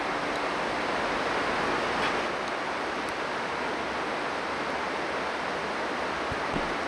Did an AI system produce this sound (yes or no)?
no